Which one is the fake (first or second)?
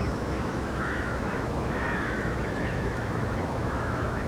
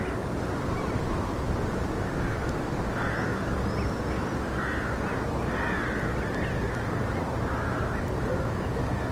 first